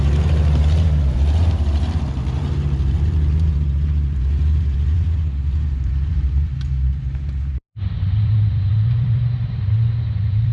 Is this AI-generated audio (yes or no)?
yes